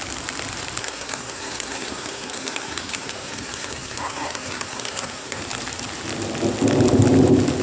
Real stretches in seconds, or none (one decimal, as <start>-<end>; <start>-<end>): 0.0-0.8; 5.4-7.6